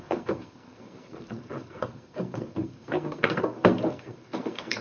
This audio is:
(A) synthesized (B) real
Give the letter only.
A